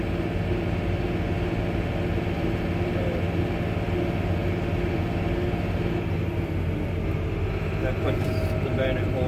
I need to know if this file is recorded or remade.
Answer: recorded